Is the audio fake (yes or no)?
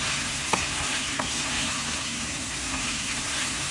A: yes